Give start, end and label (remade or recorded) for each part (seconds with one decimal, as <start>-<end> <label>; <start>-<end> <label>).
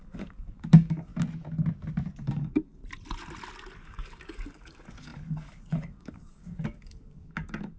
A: 0.0-1.1 remade; 1.1-2.2 recorded; 2.2-2.8 remade; 2.8-3.8 recorded; 3.8-7.8 remade